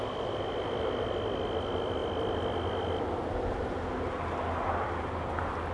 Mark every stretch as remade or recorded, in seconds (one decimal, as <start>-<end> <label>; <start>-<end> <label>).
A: 0.0-5.7 recorded